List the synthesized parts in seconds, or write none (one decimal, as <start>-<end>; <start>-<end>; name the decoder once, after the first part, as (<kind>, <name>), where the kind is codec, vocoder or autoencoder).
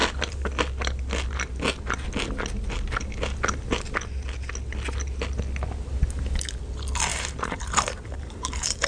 7.1-8.9 (vocoder, BigVGAN v2)